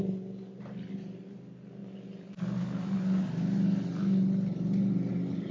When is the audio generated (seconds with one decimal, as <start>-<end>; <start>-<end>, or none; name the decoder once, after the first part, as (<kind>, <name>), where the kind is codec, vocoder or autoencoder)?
none